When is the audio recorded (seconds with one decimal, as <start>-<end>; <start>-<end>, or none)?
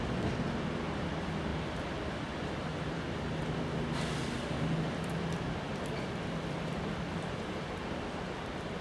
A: 0.0-1.5; 2.2-2.7; 8.0-8.8